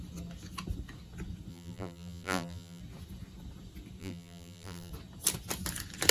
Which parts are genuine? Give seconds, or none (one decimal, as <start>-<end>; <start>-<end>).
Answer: 0.0-1.5; 2.8-4.0; 4.9-6.1

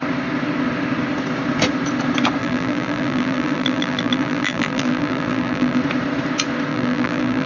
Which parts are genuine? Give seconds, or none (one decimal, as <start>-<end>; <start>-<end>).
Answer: 0.0-2.4; 5.8-6.7